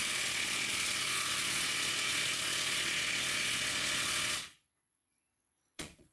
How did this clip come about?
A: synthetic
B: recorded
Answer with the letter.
A